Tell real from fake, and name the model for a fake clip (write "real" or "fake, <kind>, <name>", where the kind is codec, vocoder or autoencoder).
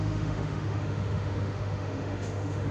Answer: fake, autoencoder, DAC-VAE